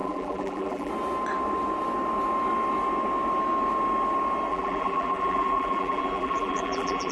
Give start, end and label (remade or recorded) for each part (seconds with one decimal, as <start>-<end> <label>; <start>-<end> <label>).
0.0-0.9 remade; 0.9-4.5 recorded; 4.5-7.1 remade